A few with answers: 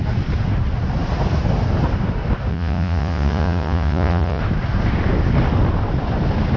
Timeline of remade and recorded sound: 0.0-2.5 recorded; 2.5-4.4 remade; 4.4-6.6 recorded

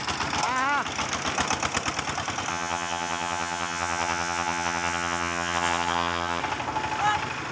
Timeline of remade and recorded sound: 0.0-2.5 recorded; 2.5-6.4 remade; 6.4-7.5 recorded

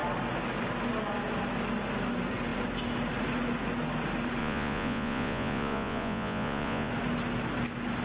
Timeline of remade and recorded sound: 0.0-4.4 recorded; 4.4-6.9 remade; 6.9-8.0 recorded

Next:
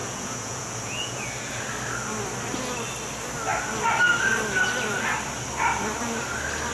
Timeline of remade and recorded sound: 0.0-1.6 remade; 1.6-6.7 recorded

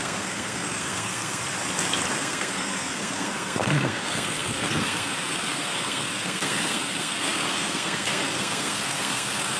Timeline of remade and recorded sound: 0.0-1.4 remade; 1.4-2.1 recorded; 2.1-9.6 remade